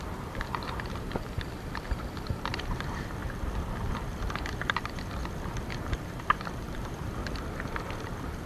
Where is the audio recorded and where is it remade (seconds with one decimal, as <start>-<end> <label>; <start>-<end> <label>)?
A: 0.0-3.2 remade; 3.2-3.9 recorded; 3.9-5.2 remade; 5.2-5.8 recorded; 5.8-7.2 remade; 7.2-8.0 recorded; 8.0-8.5 remade

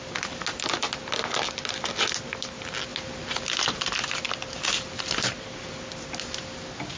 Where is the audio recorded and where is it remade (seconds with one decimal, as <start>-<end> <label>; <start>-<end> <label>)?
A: 0.0-7.0 recorded

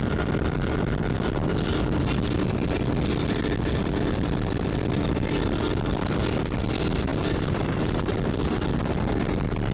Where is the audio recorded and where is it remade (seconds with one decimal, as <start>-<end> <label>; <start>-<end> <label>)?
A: 0.0-7.1 recorded; 7.1-8.1 remade; 8.1-9.7 recorded